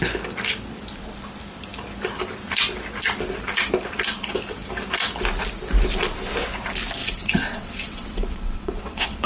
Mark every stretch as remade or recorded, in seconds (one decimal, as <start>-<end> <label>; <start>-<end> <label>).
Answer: 0.0-7.0 recorded; 7.0-9.3 remade